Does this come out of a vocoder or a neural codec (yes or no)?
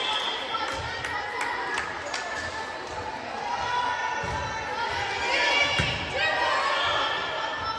no